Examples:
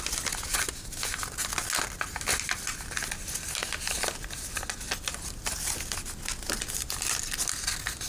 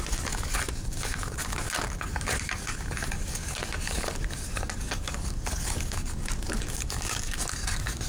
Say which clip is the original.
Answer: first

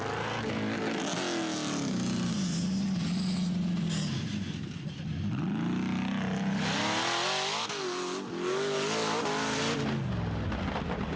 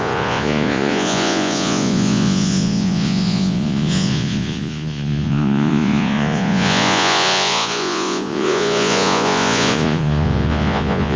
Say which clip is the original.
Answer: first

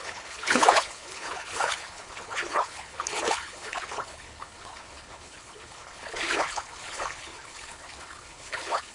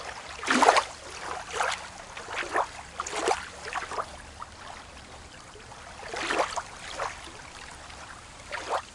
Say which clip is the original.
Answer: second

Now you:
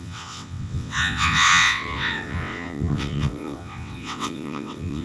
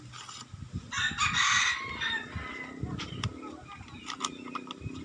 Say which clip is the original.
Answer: second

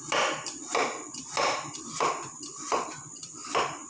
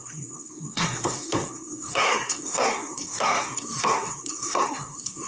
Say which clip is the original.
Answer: first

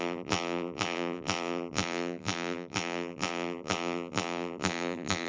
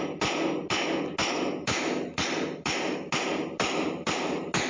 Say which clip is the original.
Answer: second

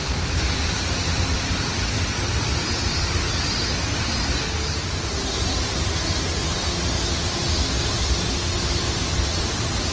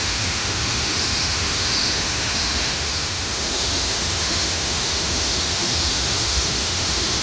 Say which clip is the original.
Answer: first